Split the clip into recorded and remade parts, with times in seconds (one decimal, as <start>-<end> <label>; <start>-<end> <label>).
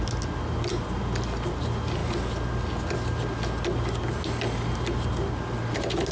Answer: 0.0-6.1 recorded